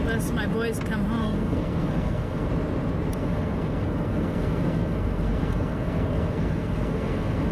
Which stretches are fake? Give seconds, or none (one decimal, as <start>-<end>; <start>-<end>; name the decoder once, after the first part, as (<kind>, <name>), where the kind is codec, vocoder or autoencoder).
1.2-2.5 (codec, SNAC); 3.1-7.5